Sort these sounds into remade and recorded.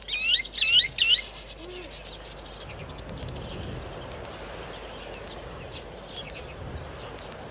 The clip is recorded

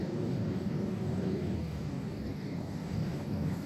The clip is remade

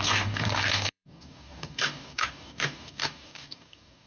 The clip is remade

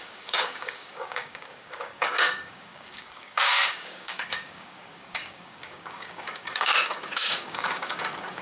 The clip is remade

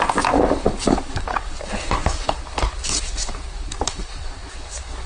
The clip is remade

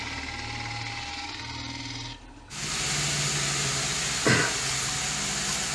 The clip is recorded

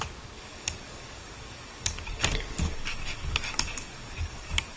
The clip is remade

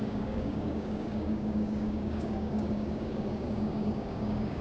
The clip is remade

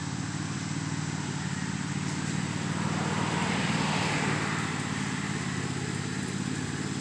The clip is recorded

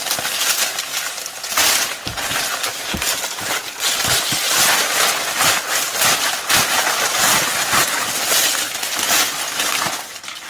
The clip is recorded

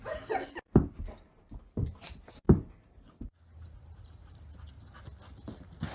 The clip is recorded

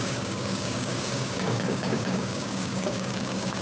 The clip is remade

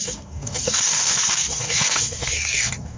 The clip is remade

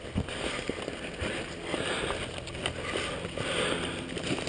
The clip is recorded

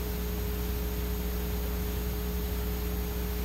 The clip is recorded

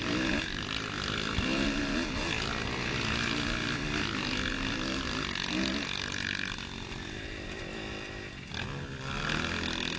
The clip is recorded